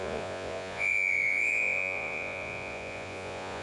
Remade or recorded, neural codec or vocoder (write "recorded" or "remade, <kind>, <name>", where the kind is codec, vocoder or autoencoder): remade, vocoder, Vocos